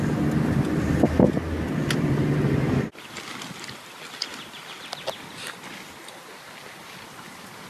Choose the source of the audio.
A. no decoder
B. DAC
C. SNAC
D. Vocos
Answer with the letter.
A